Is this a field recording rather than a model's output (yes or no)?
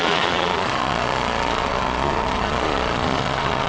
no